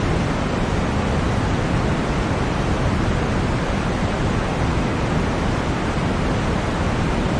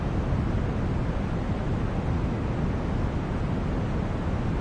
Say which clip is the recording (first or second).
second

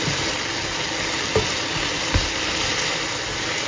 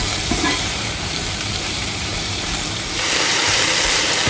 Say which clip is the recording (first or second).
first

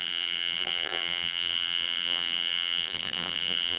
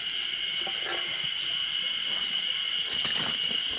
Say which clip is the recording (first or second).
second